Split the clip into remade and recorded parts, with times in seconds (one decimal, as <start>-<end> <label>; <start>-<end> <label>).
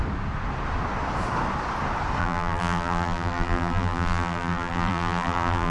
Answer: 0.0-2.2 recorded; 2.2-5.7 remade